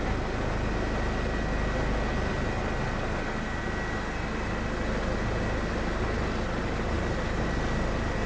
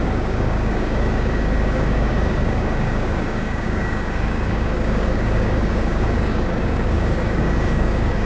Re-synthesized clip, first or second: second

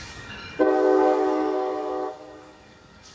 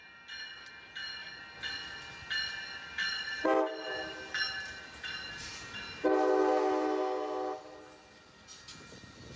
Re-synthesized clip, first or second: first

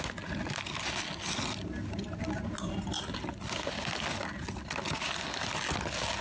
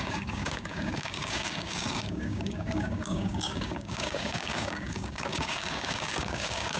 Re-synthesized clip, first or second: second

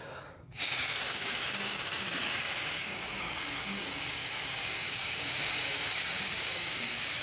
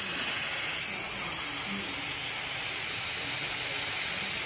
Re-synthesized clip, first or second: first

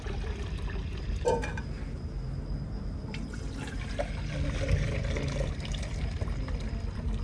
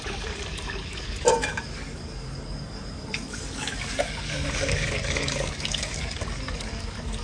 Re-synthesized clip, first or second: second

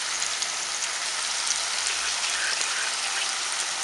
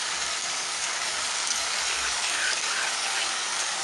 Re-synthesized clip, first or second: second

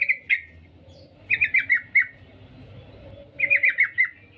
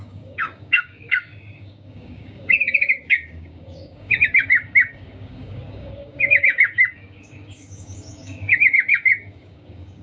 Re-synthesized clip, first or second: second